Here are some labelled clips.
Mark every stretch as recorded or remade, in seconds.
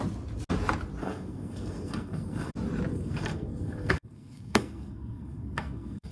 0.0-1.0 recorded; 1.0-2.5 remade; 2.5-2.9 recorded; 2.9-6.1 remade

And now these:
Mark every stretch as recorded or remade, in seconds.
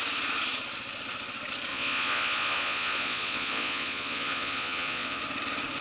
0.0-1.7 recorded; 1.7-5.2 remade; 5.2-5.8 recorded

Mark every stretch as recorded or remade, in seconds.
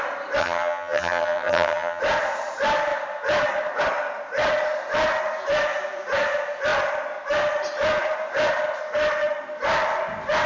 0.0-0.4 recorded; 0.4-2.0 remade; 2.0-10.5 recorded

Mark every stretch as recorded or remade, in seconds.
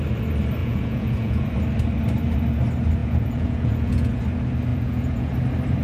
0.0-0.6 recorded; 0.6-1.5 remade; 1.5-3.0 recorded; 3.0-4.2 remade; 4.2-4.7 recorded; 4.7-5.3 remade; 5.3-5.8 recorded